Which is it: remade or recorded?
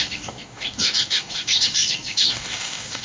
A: remade